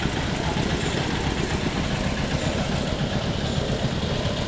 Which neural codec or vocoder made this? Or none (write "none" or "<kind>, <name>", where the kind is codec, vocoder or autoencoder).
none